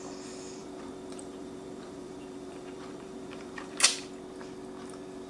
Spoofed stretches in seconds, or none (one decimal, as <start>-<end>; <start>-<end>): 0.6-3.8